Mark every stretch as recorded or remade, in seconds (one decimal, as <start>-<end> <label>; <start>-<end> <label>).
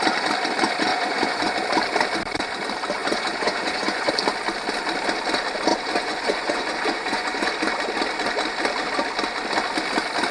0.0-0.9 recorded; 0.9-1.5 remade; 1.5-3.0 recorded; 3.0-4.1 remade; 4.1-5.7 recorded; 5.7-7.5 remade; 7.5-10.3 recorded